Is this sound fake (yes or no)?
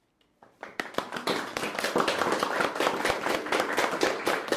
no